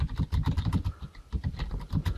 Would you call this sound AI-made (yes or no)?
yes